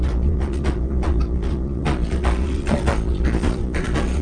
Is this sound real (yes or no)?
no